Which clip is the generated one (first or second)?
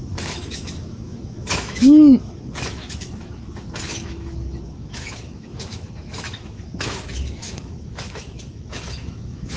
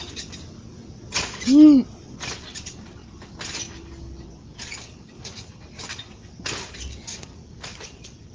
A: first